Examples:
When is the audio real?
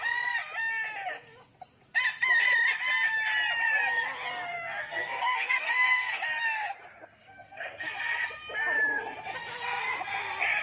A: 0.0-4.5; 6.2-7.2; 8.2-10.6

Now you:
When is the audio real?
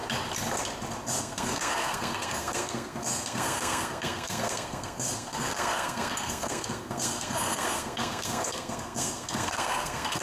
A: 0.0-1.2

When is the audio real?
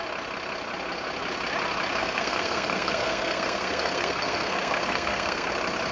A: 0.0-2.0; 5.5-5.9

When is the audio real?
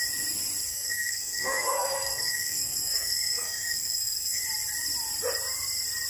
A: 0.0-0.7; 4.4-6.1